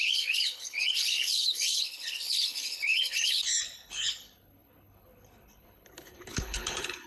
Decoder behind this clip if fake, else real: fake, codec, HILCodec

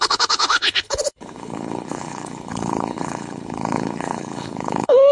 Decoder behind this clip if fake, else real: fake, codec, HILCodec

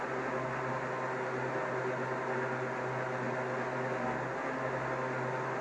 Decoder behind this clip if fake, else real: real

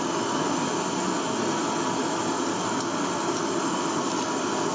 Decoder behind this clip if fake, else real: real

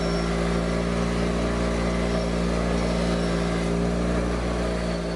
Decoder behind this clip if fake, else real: real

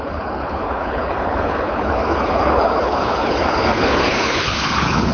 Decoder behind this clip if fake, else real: fake, codec, HILCodec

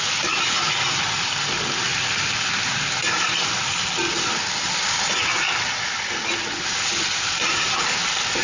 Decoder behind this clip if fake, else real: real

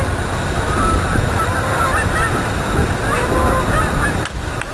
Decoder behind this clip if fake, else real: real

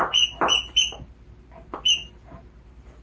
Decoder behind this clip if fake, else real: real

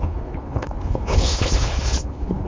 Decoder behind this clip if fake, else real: fake, codec, HILCodec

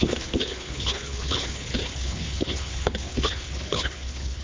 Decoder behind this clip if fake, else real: fake, codec, HILCodec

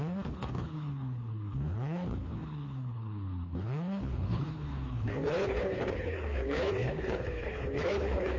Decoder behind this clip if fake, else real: fake, codec, HILCodec